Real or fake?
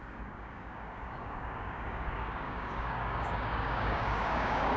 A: fake